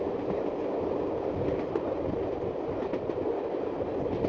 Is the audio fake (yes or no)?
no